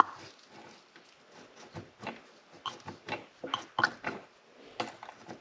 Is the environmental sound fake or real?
real